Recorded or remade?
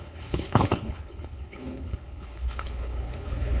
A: remade